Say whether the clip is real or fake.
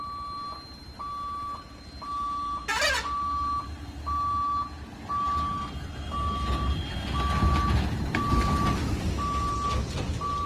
real